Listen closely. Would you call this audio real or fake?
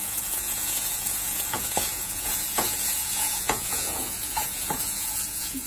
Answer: fake